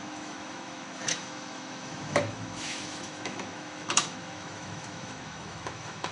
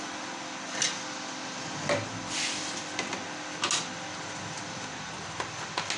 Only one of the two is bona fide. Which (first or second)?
second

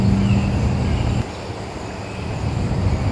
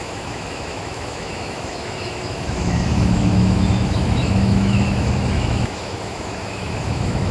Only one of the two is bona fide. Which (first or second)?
first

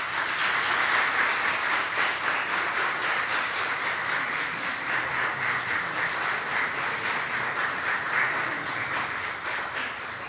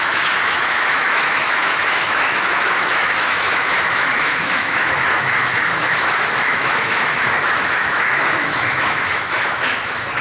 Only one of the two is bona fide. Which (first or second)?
first